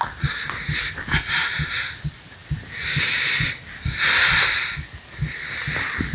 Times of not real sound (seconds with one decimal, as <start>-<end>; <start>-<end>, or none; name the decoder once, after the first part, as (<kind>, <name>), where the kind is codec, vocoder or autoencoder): none